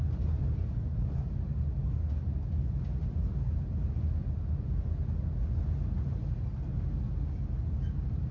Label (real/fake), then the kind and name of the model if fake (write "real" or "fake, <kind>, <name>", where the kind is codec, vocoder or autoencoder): real